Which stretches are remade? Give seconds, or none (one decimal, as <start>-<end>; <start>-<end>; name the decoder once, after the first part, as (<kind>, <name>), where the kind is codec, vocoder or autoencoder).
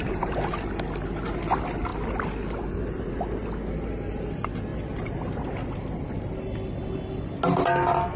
none